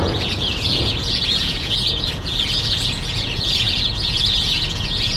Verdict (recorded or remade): remade